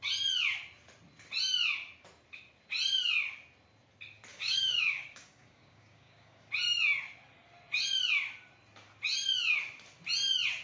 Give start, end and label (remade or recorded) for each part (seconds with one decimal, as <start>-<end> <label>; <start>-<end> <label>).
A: 0.0-4.3 recorded; 4.3-6.5 remade; 6.5-10.6 recorded